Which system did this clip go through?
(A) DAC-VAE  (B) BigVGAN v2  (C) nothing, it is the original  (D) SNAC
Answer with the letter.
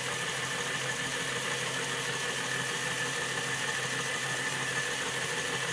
C